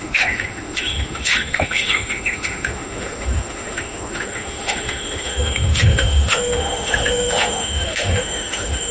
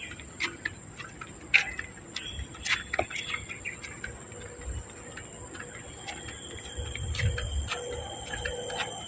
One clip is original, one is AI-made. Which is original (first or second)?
second